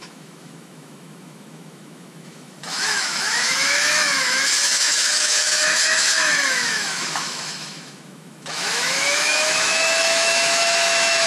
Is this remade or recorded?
remade